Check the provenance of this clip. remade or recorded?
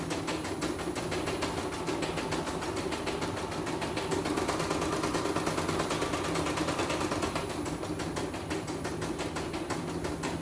recorded